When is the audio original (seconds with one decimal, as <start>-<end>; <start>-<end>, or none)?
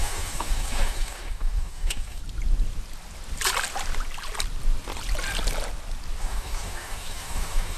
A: 2.2-6.2